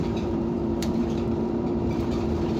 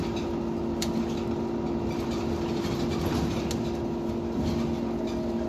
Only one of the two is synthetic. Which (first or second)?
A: first